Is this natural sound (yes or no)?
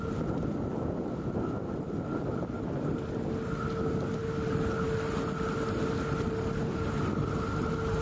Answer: yes